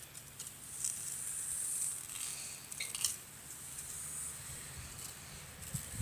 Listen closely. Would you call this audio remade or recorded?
recorded